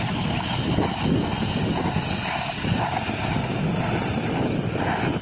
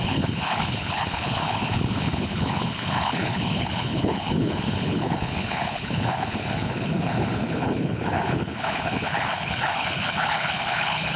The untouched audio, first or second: first